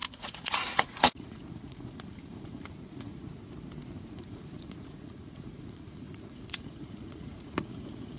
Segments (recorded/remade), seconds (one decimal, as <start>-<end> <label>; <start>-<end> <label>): 0.0-3.3 remade; 3.3-4.0 recorded; 4.0-8.2 remade